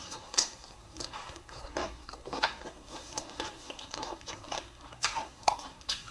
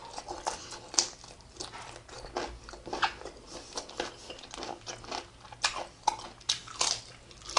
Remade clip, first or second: first